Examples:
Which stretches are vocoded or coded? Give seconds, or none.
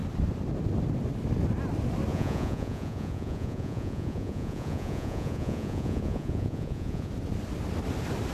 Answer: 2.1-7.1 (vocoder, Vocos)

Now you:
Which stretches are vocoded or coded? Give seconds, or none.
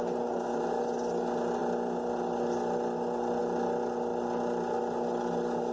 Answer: none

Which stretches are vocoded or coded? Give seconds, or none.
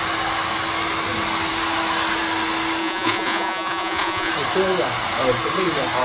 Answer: 2.8-4.3 (vocoder, Vocos)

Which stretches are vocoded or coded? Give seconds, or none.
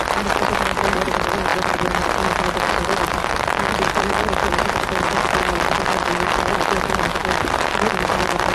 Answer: none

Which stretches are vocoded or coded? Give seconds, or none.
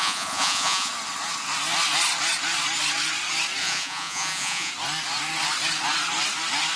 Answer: 0.0-0.9 (vocoder, Vocos); 3.6-4.7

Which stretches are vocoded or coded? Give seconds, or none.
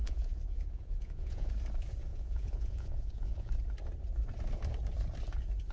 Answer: 0.0-1.5 (vocoder, Vocos); 2.1-3.5